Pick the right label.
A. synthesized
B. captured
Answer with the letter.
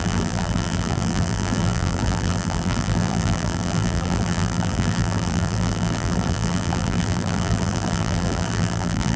A